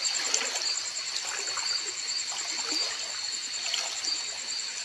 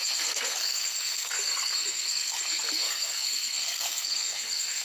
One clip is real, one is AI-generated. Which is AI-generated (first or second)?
second